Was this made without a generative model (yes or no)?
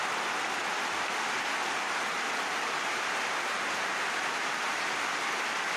yes